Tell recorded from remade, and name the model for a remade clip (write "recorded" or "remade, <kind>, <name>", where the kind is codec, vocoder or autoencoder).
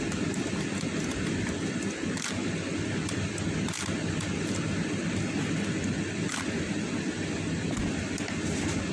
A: recorded